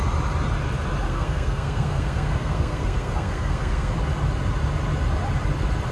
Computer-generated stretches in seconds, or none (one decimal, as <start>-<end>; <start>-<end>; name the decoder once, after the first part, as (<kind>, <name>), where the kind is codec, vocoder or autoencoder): 1.1-4.0 (codec, SNAC)